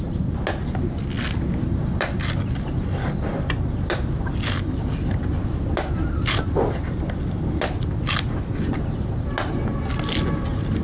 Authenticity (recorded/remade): recorded